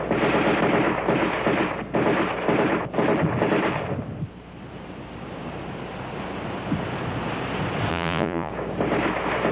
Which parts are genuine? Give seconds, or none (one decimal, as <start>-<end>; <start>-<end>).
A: 0.0-7.9; 8.5-9.5